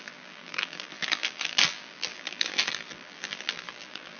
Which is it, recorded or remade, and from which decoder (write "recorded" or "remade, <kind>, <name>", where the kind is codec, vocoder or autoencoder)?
remade, vocoder, BigVGAN v2